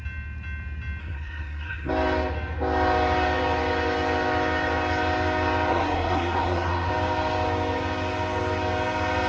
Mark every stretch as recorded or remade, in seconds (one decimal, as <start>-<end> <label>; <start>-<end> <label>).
0.0-1.0 recorded; 1.0-1.9 remade; 1.9-5.7 recorded; 5.7-6.9 remade; 6.9-9.3 recorded